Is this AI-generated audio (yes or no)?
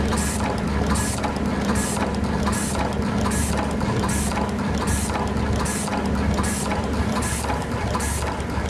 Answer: no